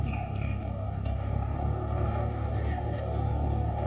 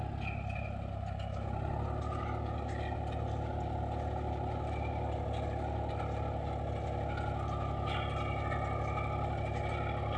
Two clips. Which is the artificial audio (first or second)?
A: first